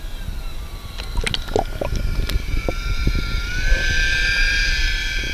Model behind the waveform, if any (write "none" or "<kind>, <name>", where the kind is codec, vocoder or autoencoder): none